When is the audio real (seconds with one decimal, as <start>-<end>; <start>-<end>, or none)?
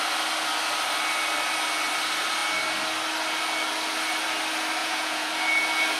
0.0-4.8; 5.3-6.0